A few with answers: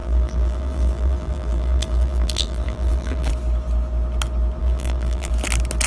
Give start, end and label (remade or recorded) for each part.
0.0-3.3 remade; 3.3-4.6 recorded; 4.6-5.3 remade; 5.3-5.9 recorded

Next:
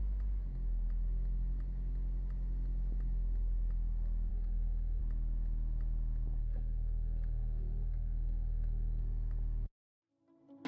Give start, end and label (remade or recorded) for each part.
0.0-4.3 recorded; 4.3-5.0 remade; 5.0-6.4 recorded; 6.4-9.0 remade; 9.0-10.7 recorded

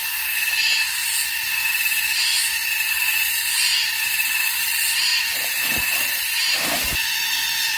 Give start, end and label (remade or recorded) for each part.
0.0-3.7 recorded; 3.7-4.4 remade; 4.4-5.1 recorded; 5.1-6.7 remade; 6.7-7.8 recorded

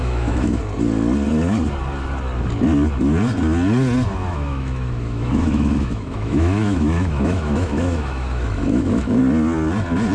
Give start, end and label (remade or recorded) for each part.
0.0-0.6 remade; 0.6-4.2 recorded; 4.2-9.2 remade; 9.2-10.1 recorded